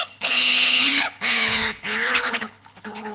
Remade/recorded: remade